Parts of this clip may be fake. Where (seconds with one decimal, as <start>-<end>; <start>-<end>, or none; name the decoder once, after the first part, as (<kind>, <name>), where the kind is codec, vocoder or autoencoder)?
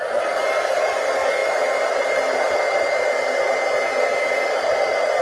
none